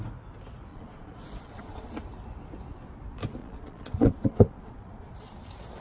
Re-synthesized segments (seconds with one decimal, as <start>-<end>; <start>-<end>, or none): 0.7-1.9; 3.4-5.1